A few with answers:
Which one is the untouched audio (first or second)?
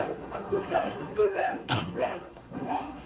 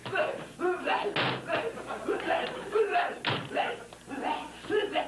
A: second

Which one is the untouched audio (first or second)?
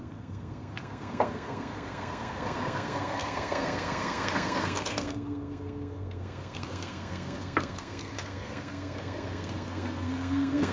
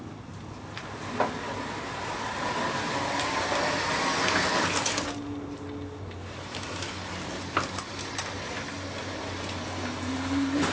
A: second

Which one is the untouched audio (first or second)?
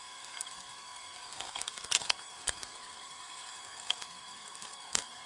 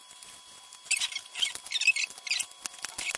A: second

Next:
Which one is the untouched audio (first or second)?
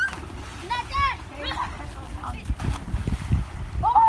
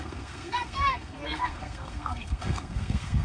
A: first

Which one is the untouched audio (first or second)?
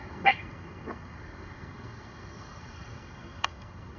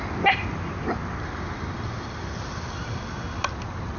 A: second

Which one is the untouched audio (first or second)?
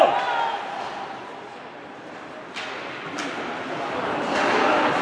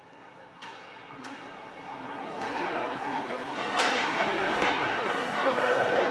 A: first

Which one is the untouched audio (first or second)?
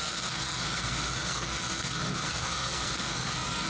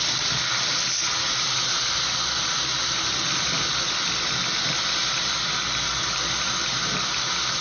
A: second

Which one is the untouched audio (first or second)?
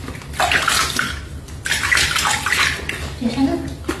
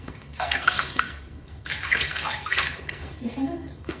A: first